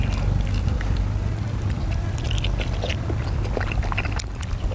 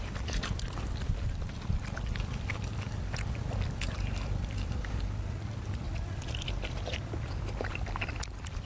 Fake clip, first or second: second